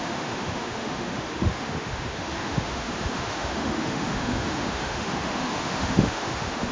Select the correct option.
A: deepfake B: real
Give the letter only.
A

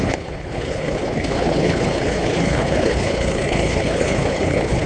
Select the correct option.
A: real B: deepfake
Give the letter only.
B